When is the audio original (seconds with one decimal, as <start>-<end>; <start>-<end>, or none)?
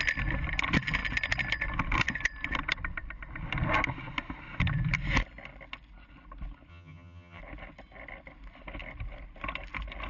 0.0-6.7; 7.4-10.1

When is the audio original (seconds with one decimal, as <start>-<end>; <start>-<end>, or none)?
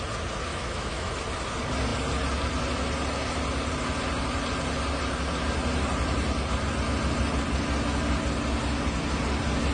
0.0-0.5; 1.1-9.7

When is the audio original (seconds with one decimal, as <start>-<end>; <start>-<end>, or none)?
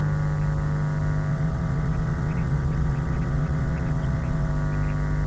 0.0-1.3; 4.5-5.3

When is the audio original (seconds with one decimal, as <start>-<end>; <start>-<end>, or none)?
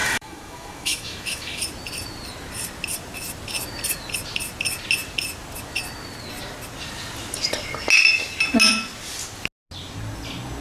1.6-10.6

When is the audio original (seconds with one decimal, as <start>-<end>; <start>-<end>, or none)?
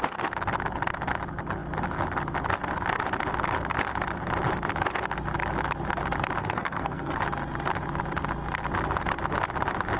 0.0-6.4; 7.2-10.0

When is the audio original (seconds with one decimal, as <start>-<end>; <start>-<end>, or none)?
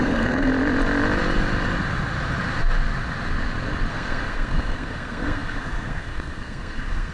0.5-3.9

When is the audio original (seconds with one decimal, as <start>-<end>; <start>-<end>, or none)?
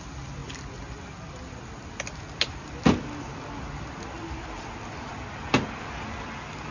0.0-6.7